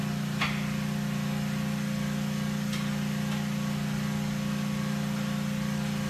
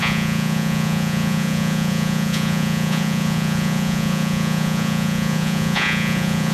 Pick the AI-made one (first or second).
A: second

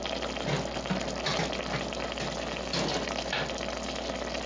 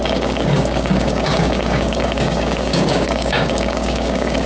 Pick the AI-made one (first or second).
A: second